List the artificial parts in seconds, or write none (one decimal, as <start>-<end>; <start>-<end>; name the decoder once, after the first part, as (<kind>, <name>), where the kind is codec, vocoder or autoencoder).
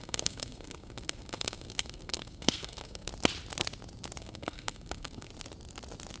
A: 0.0-3.1 (codec, SNAC); 4.2-5.3